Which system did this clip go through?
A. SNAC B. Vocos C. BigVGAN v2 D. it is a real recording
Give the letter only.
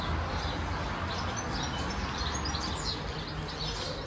D